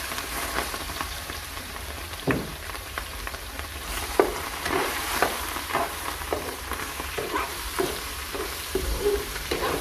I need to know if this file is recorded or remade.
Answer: remade